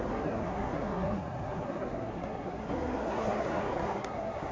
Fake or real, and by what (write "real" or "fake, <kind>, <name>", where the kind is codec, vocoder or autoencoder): fake, codec, SNAC